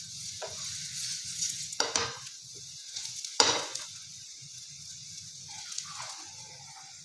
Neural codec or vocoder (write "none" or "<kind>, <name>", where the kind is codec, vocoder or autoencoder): vocoder, Vocos